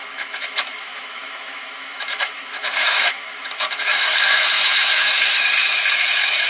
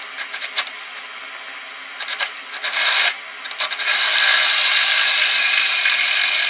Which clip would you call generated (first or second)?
first